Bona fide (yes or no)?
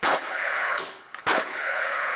no